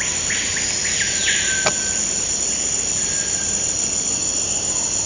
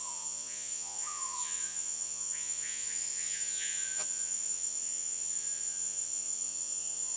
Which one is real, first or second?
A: first